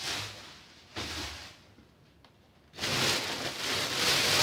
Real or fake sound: real